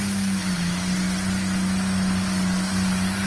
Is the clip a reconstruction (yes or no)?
no